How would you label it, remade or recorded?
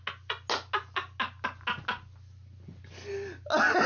recorded